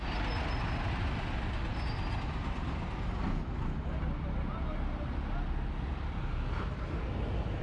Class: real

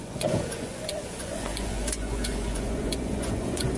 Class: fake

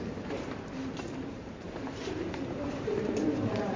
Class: fake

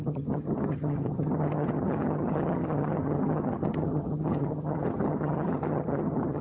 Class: fake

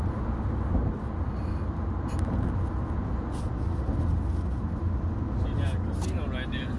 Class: real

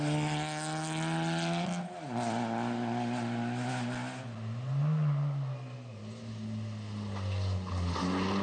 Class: real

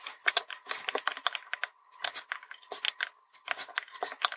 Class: real